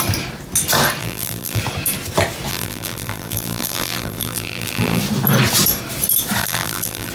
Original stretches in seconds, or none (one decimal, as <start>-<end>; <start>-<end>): 0.0-1.0; 1.6-2.5; 5.0-6.4